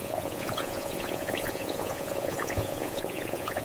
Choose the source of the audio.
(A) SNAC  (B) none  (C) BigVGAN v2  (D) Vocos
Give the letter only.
D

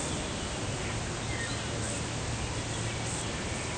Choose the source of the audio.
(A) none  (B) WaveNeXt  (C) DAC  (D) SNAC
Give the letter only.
A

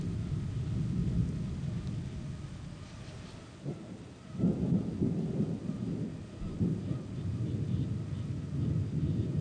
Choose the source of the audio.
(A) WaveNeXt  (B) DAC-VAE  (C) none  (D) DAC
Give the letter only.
C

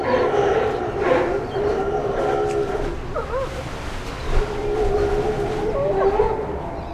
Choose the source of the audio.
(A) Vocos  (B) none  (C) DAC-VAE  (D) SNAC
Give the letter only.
B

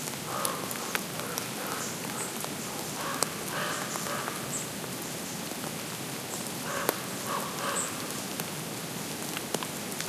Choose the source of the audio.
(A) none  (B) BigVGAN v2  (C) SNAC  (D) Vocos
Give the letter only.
A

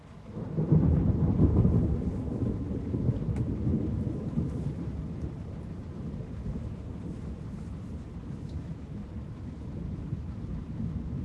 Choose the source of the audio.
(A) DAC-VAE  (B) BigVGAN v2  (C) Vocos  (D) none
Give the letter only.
D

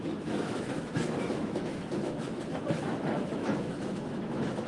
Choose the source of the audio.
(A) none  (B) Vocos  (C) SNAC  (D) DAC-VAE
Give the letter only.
D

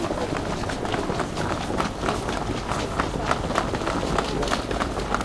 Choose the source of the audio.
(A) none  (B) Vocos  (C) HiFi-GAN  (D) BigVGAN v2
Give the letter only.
A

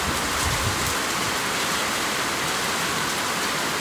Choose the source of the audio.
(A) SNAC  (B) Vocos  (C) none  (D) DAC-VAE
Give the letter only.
C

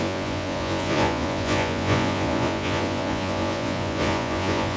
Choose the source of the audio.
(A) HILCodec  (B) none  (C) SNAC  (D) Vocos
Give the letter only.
D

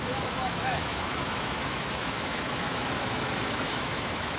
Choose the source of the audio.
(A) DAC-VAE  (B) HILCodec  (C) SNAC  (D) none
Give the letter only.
A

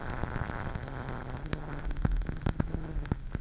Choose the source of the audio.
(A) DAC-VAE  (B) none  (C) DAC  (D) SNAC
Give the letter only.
B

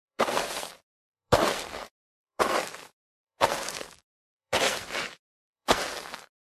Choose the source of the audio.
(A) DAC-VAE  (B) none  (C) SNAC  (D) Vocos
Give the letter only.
C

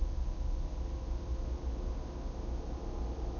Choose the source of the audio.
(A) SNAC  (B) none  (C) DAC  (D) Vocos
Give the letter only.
B